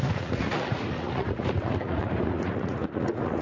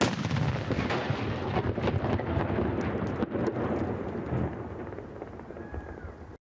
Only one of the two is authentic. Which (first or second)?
second